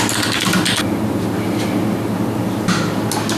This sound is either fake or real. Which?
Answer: real